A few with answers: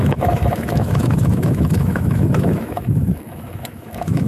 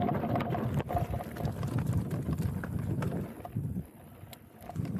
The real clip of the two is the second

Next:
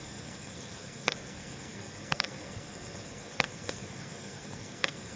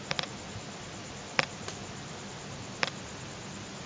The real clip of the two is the second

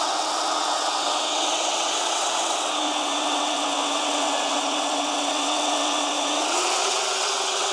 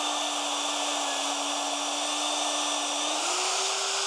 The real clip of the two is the second